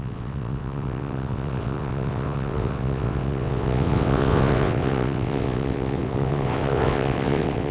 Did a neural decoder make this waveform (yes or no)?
yes